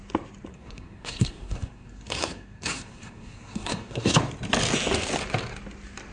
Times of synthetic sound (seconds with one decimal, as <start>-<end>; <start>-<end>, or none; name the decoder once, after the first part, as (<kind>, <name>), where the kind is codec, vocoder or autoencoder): 0.5-4.2 (codec, SNAC)